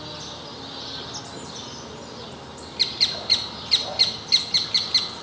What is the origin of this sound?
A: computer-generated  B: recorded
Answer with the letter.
B